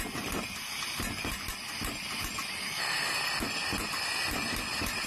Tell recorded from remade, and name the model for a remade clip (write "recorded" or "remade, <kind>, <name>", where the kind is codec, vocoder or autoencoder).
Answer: recorded